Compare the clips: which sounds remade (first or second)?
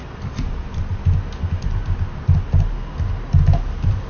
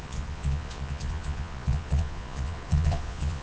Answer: second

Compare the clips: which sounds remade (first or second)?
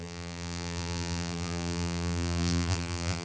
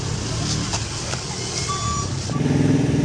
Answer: first